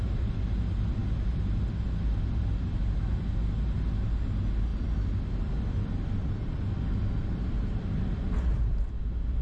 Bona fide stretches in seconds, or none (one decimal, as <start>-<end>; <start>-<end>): 0.0-9.4